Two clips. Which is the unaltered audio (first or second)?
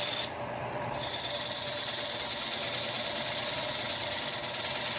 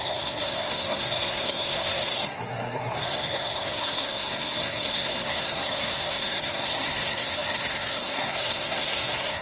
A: first